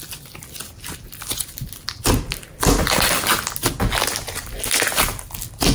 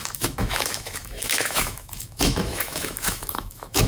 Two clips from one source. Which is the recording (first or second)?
first